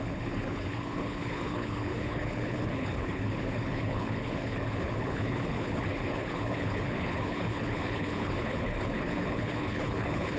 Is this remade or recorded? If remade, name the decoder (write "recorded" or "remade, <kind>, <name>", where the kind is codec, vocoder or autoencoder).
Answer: remade, codec, HILCodec